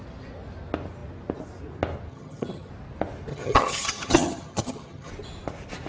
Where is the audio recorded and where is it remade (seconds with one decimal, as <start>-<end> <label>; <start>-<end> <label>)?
0.0-2.1 recorded; 2.1-2.7 remade; 2.7-3.3 recorded; 3.3-5.1 remade; 5.1-5.9 recorded